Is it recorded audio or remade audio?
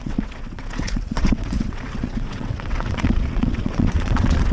remade